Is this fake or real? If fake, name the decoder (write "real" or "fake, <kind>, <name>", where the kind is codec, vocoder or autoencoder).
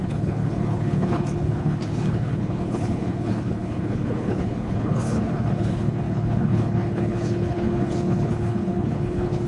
fake, codec, HILCodec